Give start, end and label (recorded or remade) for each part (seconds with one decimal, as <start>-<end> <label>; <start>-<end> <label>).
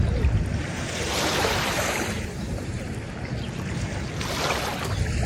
0.0-0.6 recorded; 0.6-3.8 remade; 3.8-5.3 recorded